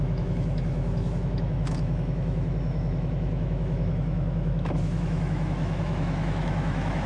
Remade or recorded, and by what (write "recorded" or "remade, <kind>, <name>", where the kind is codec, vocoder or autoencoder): remade, autoencoder, DAC-VAE